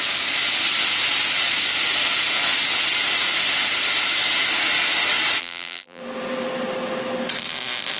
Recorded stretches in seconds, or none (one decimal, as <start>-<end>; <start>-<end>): 0.0-5.4; 6.0-8.0